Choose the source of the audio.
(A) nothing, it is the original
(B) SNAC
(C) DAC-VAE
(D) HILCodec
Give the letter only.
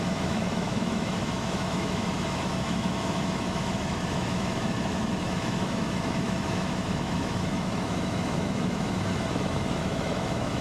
C